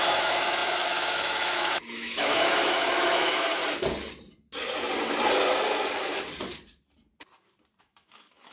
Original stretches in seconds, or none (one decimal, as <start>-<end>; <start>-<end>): 3.6-7.8